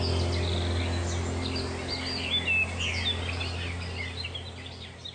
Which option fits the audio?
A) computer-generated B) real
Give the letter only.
B